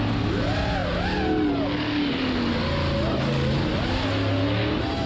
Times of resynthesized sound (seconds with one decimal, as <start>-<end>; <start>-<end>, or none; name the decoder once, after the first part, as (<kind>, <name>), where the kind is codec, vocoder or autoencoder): none